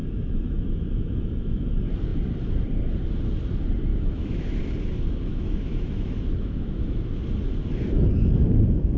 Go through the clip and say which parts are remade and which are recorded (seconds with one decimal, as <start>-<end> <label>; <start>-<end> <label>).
0.0-1.7 remade; 1.7-3.9 recorded; 3.9-4.6 remade; 4.6-5.3 recorded; 5.3-7.2 remade; 7.2-9.0 recorded